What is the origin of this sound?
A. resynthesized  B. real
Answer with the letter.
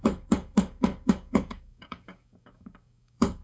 A